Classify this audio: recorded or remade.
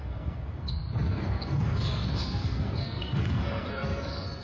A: remade